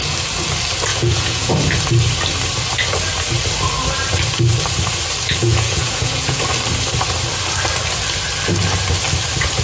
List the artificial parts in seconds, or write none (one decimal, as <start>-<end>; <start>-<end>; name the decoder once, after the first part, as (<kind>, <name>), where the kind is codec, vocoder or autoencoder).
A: 0.9-1.5 (vocoder, Vocos); 5.4-6.4